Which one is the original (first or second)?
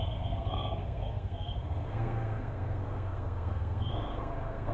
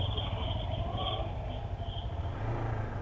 second